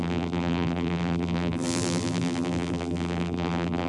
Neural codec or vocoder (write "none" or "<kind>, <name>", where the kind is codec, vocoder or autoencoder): vocoder, BigVGAN v2